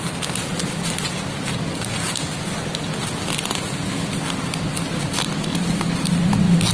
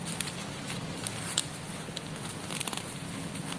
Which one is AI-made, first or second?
second